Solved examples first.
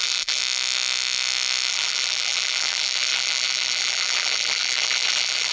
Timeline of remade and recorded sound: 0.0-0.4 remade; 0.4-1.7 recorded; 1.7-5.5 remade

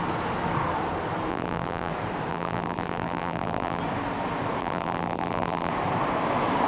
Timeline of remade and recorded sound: 0.0-1.3 recorded; 1.3-1.9 remade; 1.9-2.3 recorded; 2.3-3.8 remade; 3.8-4.6 recorded; 4.6-5.7 remade; 5.7-6.7 recorded

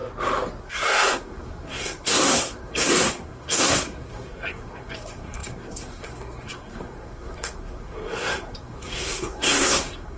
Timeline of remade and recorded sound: 0.0-0.6 recorded; 0.6-10.2 remade

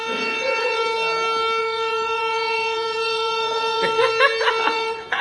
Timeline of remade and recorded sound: 0.0-0.8 remade; 0.8-1.6 recorded; 1.6-4.1 remade; 4.1-4.6 recorded; 4.6-5.2 remade

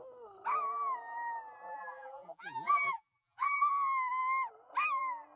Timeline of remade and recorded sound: 0.0-1.7 recorded; 1.7-3.7 remade; 3.7-5.4 recorded

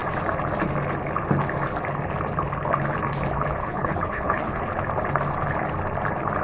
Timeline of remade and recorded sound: 0.0-3.6 recorded; 3.6-4.6 remade; 4.6-6.4 recorded